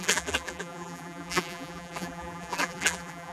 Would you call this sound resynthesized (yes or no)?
yes